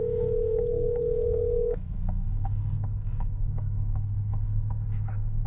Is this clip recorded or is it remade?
remade